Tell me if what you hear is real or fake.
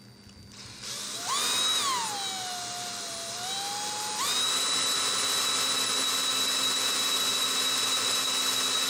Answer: real